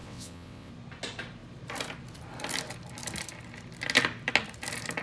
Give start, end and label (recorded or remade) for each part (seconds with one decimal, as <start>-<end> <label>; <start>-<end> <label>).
0.0-0.7 remade; 0.7-5.0 recorded